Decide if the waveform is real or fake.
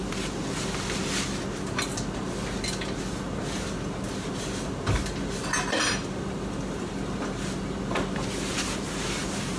real